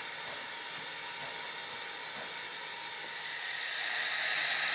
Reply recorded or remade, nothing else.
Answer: recorded